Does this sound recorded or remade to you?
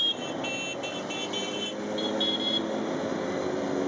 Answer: recorded